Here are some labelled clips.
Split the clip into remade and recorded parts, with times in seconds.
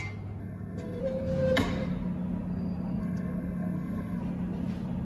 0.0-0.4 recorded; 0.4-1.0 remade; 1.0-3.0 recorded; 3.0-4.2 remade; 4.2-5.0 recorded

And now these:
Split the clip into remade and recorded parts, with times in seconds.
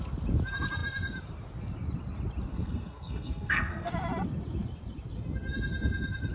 0.0-2.5 recorded; 2.5-3.9 remade; 3.9-6.3 recorded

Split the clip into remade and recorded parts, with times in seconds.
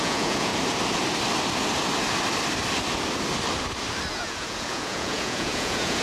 0.0-0.5 remade; 0.5-4.1 recorded; 4.1-6.0 remade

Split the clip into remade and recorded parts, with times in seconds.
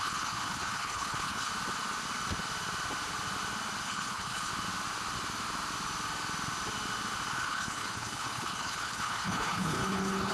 0.0-1.5 remade; 1.5-3.8 recorded; 3.8-4.5 remade; 4.5-7.3 recorded; 7.3-10.3 remade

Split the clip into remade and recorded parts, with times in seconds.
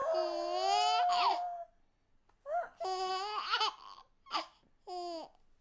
0.0-5.6 recorded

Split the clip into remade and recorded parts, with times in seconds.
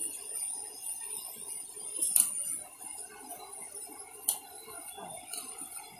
0.0-6.0 recorded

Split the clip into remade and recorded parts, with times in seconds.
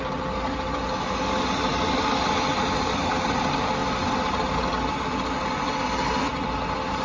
0.0-7.0 recorded